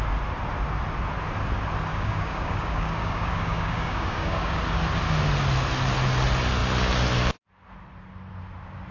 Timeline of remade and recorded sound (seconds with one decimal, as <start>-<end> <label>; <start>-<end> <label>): 0.0-1.9 recorded; 1.9-4.6 remade; 4.6-8.9 recorded

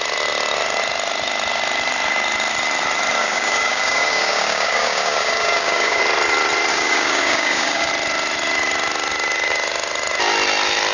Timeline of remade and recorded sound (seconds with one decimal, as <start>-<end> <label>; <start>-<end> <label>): 0.0-3.2 recorded; 3.2-6.0 remade; 6.0-6.7 recorded; 6.7-7.9 remade; 7.9-10.9 recorded

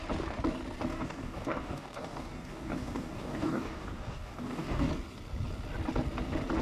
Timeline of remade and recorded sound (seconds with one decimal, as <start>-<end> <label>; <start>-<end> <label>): 0.0-0.9 recorded; 0.9-4.9 remade; 4.9-6.6 recorded

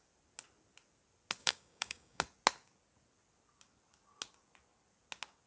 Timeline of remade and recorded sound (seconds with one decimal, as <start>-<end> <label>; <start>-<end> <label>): 0.0-1.4 recorded; 1.4-2.2 remade; 2.2-5.5 recorded

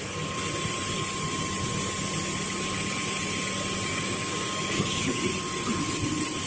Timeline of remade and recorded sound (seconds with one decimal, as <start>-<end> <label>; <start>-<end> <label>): 0.0-3.9 recorded; 3.9-5.2 remade; 5.2-6.5 recorded

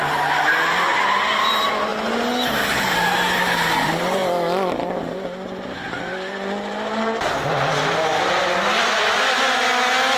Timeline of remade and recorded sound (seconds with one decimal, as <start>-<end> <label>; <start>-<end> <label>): 0.0-10.2 recorded